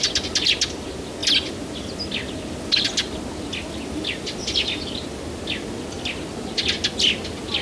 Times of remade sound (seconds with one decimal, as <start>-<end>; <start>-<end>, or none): none